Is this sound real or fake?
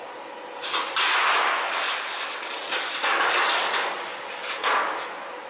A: real